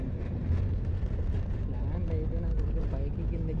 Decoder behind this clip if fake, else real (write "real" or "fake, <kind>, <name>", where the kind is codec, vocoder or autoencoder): real